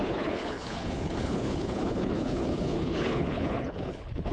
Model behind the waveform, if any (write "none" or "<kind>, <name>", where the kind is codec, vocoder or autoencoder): codec, HILCodec